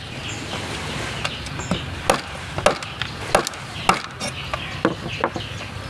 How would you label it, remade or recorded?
recorded